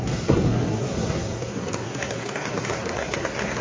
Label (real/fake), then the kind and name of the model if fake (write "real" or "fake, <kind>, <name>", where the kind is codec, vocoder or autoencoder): fake, codec, SNAC